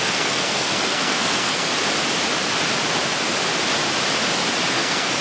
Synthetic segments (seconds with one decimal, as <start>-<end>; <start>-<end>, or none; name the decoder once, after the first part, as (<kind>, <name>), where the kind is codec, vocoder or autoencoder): 0.0-1.7 (codec, SNAC); 4.7-5.2